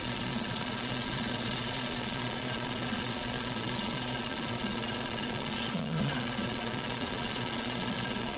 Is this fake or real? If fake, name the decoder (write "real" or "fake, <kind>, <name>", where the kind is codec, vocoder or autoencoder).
fake, vocoder, Vocos